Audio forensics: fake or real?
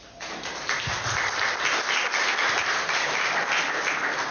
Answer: real